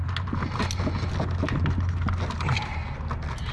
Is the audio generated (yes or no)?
no